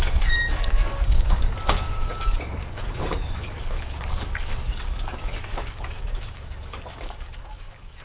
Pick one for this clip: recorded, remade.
remade